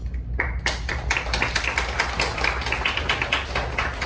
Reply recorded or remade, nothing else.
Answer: recorded